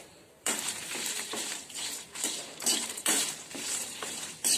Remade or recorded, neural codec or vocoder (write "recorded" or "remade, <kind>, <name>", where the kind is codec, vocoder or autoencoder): remade, vocoder, BigVGAN v2